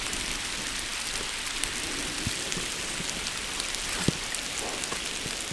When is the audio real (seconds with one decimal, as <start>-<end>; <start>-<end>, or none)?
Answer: 0.0-5.5